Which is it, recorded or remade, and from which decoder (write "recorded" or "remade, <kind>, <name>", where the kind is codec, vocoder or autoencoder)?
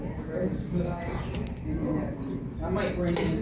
recorded